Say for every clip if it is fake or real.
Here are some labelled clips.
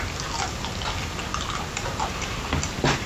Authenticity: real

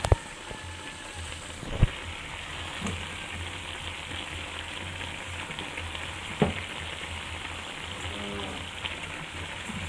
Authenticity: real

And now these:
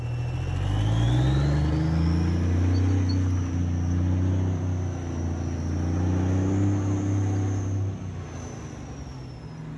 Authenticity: real